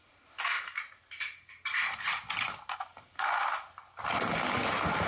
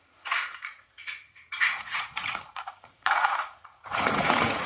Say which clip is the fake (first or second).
second